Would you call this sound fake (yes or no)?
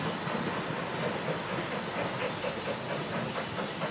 no